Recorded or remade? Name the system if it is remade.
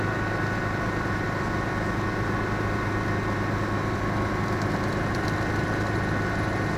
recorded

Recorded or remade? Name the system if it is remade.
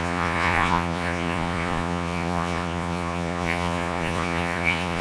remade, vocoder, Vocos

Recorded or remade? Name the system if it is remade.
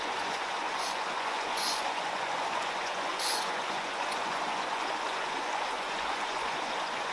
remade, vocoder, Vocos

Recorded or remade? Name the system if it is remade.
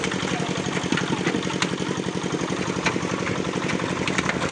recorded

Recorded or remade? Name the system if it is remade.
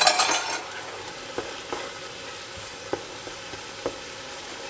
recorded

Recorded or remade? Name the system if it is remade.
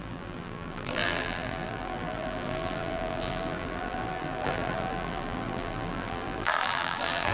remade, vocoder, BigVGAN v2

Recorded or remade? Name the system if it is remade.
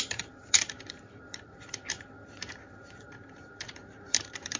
remade, vocoder, BigVGAN v2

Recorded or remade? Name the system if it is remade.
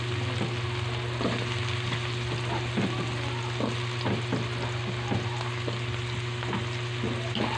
recorded